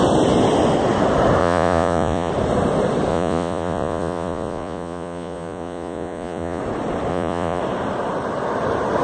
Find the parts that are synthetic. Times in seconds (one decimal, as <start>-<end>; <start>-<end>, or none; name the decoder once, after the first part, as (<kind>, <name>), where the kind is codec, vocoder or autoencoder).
1.4-2.3 (vocoder, Vocos); 3.1-6.6; 7.1-7.6